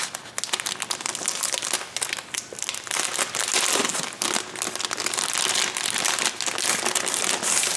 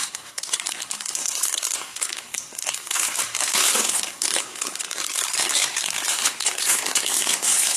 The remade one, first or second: second